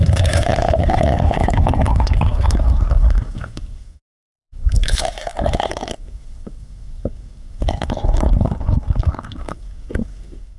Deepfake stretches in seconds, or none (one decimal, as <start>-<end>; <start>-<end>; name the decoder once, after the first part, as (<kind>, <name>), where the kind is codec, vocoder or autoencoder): 0.0-10.6 (codec, SNAC)